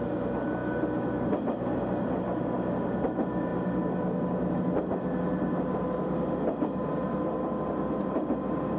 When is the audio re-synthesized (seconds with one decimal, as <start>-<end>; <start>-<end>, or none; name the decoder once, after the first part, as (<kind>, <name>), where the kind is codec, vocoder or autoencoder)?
none